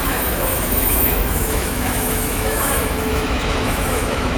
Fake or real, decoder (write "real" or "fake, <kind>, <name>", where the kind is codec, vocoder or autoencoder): fake, autoencoder, DAC-VAE